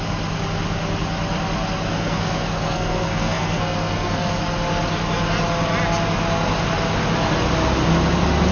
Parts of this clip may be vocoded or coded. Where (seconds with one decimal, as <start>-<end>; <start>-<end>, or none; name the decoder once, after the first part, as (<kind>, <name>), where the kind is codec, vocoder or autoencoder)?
1.9-4.3 (codec, SNAC)